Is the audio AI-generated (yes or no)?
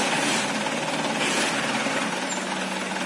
no